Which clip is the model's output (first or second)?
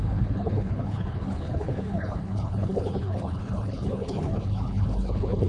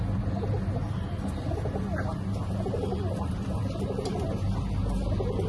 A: first